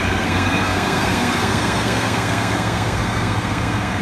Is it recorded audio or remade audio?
remade